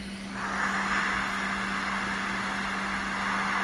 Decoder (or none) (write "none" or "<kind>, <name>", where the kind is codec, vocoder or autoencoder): none